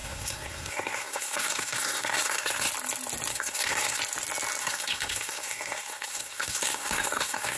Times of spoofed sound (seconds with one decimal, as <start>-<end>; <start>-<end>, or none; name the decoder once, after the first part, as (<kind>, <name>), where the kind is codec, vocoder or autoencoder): 0.0-2.7 (codec, SNAC); 3.3-4.0; 4.6-7.6